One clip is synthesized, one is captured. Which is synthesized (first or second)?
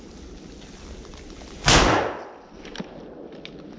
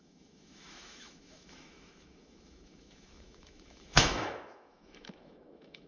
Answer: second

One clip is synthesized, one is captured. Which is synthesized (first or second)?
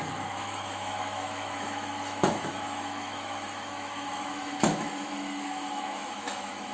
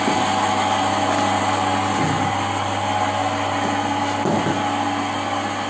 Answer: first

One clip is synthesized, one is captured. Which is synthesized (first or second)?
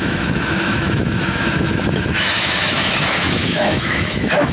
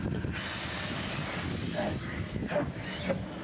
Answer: first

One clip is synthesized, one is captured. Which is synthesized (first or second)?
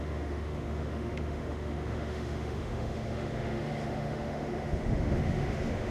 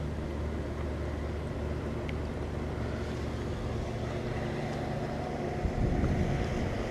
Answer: first